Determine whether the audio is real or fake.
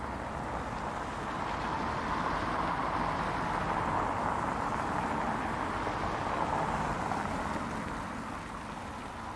real